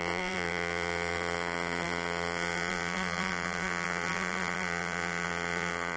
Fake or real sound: fake